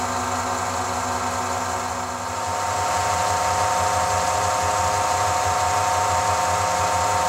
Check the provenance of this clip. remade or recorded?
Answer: recorded